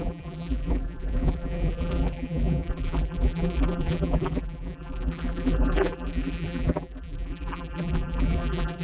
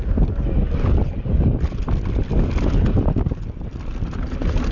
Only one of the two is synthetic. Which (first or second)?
first